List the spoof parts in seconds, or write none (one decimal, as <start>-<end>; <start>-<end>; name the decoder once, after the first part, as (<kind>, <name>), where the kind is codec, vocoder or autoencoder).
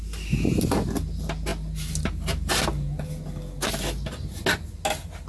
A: none